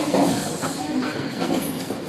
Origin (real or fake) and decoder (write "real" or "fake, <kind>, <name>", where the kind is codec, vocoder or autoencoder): fake, codec, SNAC